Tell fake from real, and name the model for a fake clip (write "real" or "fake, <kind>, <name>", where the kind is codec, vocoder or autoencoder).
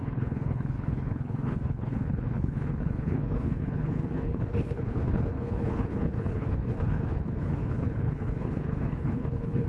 fake, codec, HILCodec